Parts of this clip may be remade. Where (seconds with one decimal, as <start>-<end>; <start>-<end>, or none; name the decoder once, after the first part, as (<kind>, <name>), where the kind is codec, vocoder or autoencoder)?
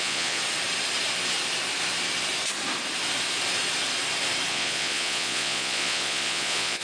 0.0-0.4 (vocoder, Vocos); 4.5-6.8